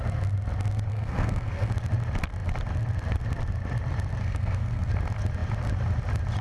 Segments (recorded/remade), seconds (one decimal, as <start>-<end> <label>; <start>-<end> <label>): 0.0-0.9 recorded; 0.9-1.7 remade; 1.7-4.2 recorded; 4.2-4.9 remade; 4.9-6.4 recorded